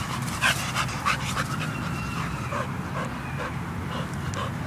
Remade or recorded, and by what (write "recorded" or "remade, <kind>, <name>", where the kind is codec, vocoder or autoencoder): remade, vocoder, BigVGAN v2